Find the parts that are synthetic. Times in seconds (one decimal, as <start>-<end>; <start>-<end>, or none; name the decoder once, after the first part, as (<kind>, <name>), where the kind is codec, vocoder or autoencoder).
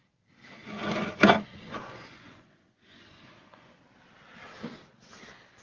0.6-3.8 (vocoder, Vocos)